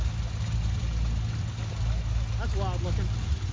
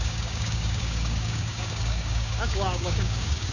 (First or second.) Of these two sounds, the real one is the first